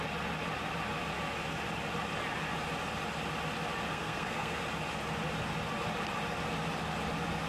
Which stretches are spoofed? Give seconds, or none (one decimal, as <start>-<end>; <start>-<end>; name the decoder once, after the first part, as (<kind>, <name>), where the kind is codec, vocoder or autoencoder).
3.9-4.6 (codec, SNAC)